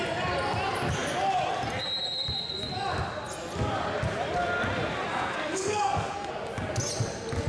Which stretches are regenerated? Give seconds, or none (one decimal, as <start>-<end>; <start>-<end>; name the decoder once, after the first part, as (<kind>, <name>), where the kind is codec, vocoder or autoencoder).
5.1-6.3 (codec, SNAC)